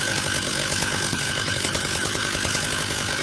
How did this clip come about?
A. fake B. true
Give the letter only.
A